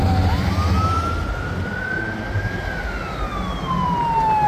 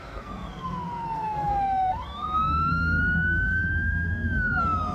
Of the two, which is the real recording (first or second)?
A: first